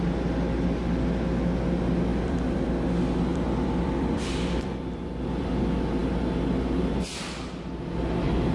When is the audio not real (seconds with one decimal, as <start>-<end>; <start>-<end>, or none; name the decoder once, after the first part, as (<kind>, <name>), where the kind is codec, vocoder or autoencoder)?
2.1-2.7 (vocoder, BigVGAN v2); 3.3-5.5